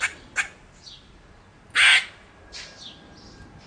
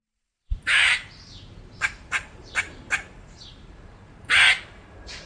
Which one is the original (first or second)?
first